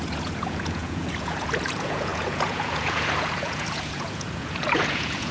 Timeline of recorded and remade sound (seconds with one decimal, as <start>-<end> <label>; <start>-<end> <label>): 0.0-5.3 remade